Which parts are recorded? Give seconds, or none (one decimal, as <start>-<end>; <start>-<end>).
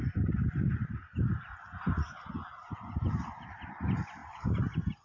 0.0-5.0